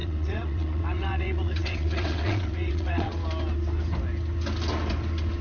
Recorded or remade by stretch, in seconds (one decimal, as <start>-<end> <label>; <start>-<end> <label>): 0.0-3.2 remade; 3.2-5.4 recorded